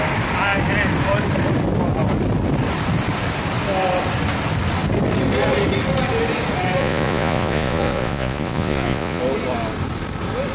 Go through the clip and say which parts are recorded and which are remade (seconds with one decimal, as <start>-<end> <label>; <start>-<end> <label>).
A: 0.0-6.8 recorded; 6.8-9.2 remade; 9.2-10.5 recorded